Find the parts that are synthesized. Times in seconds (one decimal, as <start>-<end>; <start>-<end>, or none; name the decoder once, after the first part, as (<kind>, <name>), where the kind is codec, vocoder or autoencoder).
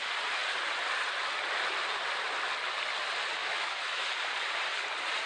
3.4-4.1 (autoencoder, DAC-VAE)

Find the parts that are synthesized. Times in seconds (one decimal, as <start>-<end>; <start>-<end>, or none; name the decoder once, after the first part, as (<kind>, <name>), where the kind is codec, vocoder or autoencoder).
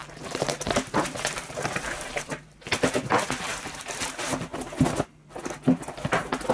0.0-2.3 (vocoder, BigVGAN v2); 3.5-4.0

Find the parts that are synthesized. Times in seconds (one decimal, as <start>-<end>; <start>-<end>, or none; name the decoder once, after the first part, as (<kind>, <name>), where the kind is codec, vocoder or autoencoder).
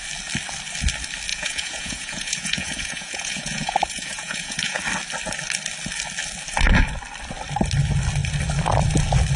1.3-4.8 (vocoder, Vocos)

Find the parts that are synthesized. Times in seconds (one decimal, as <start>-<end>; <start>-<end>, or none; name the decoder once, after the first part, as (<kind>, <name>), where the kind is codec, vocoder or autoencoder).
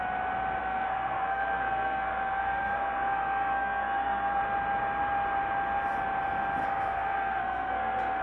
0.6-4.4 (codec, SNAC); 6.6-8.2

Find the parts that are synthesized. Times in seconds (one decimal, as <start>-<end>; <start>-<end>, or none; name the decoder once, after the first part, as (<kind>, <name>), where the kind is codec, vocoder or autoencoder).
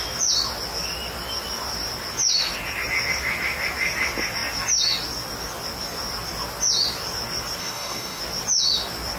7.6-8.2 (codec, DAC)